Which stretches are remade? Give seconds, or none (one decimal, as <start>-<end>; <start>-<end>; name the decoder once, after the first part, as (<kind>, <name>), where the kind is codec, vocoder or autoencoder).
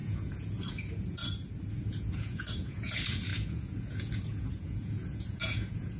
0.0-1.2 (vocoder, Vocos); 1.7-6.0